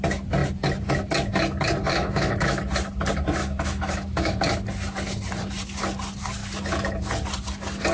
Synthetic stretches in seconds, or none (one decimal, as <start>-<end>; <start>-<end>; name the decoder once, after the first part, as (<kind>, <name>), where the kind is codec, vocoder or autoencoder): 1.9-2.6 (autoencoder, DAC-VAE); 3.4-4.4